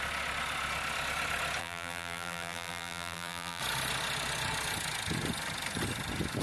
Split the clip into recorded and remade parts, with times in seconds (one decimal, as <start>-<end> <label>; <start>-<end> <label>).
0.0-1.6 recorded; 1.6-3.6 remade; 3.6-6.4 recorded